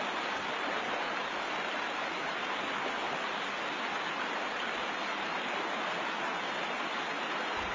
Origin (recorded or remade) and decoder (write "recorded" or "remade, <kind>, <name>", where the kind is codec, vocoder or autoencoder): recorded